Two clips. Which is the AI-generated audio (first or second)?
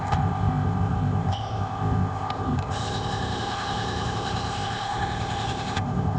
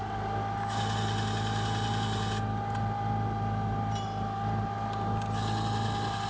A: first